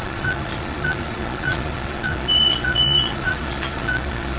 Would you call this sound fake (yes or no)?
yes